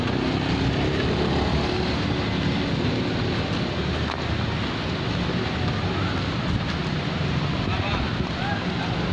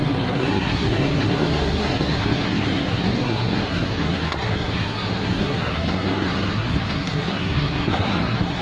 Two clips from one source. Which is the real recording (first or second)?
first